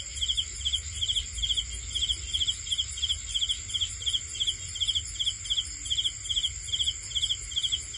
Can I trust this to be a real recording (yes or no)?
yes